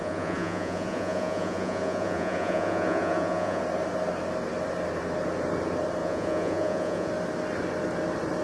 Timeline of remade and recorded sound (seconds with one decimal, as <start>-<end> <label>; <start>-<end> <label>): 0.0-3.6 remade; 3.6-6.0 recorded; 6.0-7.1 remade; 7.1-8.4 recorded